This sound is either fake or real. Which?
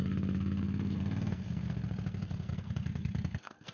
fake